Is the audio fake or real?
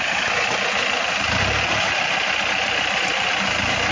real